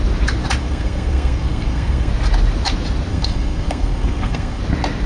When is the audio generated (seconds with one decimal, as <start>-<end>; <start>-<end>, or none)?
0.6-2.1; 3.1-4.6